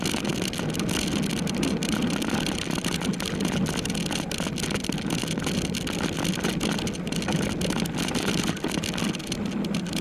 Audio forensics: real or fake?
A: real